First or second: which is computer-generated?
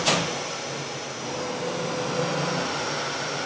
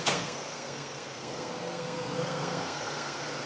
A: second